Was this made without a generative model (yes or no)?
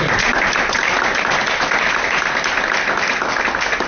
yes